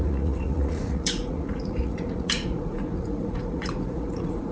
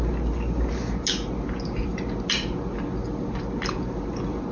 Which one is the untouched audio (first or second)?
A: second